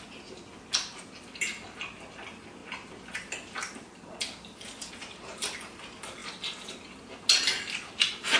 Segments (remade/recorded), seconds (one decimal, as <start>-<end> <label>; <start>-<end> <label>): 0.0-8.4 recorded